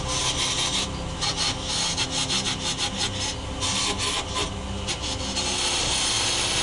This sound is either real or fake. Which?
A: real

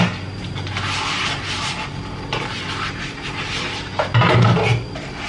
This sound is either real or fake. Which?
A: real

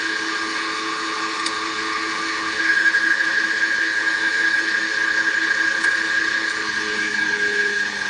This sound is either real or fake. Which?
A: fake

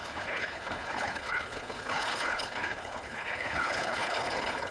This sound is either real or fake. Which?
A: fake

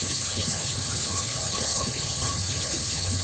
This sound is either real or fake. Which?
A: fake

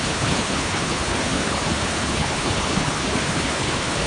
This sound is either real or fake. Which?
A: fake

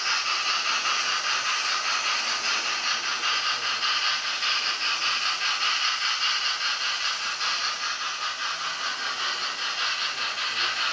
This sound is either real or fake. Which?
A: real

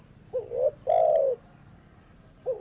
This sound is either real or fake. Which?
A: real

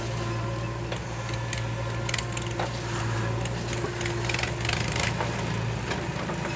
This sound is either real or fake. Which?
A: real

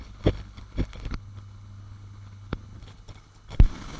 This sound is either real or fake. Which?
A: fake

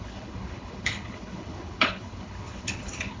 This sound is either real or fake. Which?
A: fake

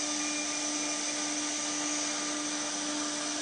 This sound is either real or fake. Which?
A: real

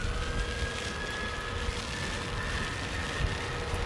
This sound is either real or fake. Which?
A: real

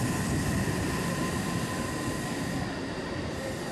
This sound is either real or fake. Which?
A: real